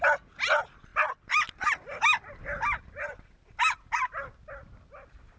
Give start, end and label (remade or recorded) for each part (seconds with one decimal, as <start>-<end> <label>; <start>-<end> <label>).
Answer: 0.0-5.4 recorded